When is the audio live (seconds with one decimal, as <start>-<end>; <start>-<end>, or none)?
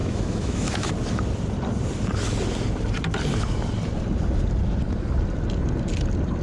0.9-6.4